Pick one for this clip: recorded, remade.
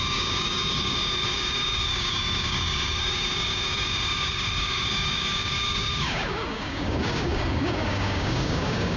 remade